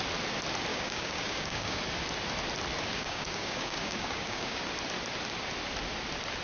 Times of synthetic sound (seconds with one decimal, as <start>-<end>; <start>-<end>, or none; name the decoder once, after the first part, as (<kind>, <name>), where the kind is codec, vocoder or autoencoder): 0.7-1.8 (codec, DAC); 2.9-4.6